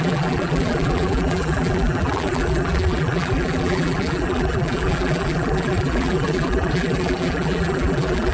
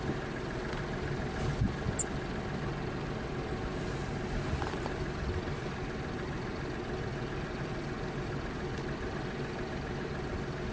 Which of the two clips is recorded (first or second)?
second